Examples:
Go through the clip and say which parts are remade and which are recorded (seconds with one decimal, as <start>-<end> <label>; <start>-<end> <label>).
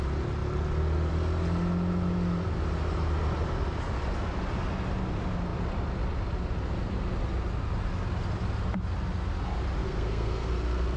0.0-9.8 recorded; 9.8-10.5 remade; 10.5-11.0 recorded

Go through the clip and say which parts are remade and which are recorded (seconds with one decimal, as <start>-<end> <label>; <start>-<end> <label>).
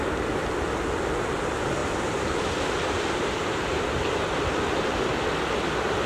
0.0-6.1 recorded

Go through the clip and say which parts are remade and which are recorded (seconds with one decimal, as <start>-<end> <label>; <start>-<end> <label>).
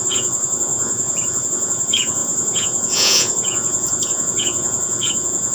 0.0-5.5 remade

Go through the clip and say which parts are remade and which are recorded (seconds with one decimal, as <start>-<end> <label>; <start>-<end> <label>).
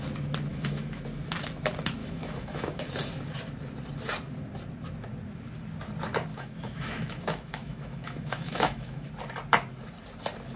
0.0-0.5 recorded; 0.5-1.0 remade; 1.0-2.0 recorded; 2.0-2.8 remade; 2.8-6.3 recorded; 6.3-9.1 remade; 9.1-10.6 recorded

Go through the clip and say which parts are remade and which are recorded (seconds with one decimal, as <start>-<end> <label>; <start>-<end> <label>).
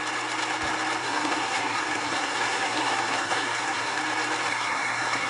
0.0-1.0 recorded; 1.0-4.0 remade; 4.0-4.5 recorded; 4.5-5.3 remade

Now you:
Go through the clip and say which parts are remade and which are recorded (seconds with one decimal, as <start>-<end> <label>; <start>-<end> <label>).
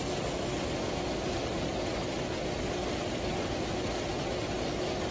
0.0-5.1 recorded